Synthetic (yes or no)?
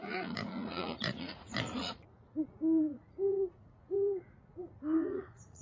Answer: yes